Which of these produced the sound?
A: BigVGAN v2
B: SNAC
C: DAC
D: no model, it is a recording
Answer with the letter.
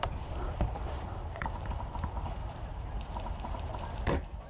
A